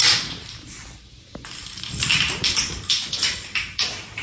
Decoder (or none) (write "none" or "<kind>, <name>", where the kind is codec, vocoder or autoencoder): vocoder, BigVGAN v2